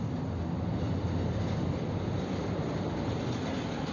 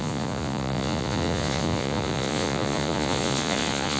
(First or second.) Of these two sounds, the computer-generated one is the second